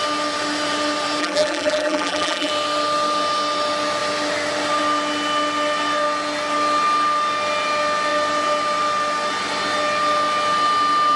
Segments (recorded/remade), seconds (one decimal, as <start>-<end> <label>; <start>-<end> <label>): 0.0-1.2 recorded; 1.2-2.5 remade; 2.5-11.2 recorded